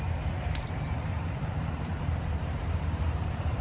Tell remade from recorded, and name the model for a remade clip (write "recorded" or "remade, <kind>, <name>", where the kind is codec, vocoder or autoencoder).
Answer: remade, vocoder, BigVGAN v2